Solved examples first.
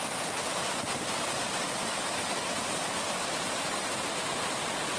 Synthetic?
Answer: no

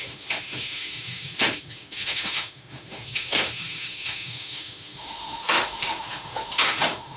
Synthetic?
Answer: yes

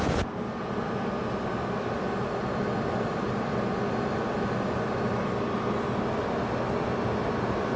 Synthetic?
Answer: no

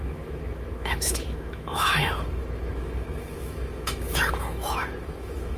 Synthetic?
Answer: yes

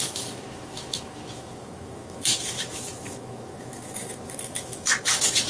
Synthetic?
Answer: yes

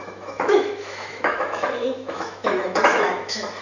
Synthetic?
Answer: yes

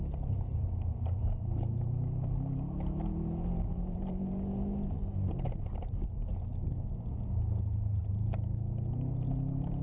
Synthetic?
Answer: no